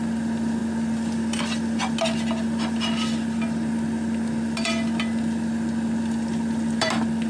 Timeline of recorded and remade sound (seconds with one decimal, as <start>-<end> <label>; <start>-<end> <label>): 0.0-7.3 recorded